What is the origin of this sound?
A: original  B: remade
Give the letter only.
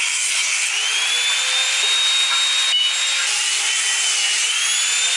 A